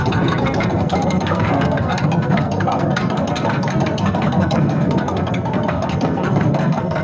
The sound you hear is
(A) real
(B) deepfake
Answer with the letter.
B